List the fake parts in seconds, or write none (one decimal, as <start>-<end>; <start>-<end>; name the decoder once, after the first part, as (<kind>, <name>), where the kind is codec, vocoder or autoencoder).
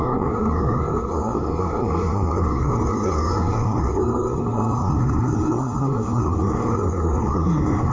0.0-7.9 (codec, SNAC)